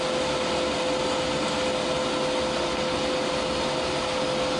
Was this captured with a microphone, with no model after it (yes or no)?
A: yes